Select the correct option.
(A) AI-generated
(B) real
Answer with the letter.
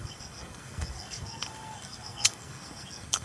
A